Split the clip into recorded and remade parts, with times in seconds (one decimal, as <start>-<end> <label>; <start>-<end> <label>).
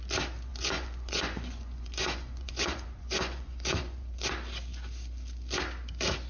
0.0-0.5 recorded; 0.5-4.3 remade; 4.3-6.3 recorded